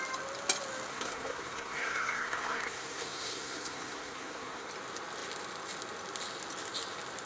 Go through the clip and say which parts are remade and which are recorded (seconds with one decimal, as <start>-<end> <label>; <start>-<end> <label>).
0.0-0.9 recorded; 0.9-4.7 remade; 4.7-7.3 recorded